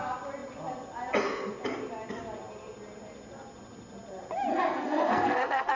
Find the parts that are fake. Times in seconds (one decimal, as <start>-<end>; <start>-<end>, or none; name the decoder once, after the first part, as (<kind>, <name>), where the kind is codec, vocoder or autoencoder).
4.5-5.8 (codec, SNAC)